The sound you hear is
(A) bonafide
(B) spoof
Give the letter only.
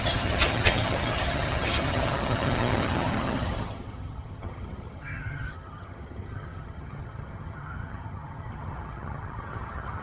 B